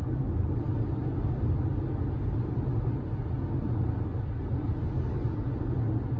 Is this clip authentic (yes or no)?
yes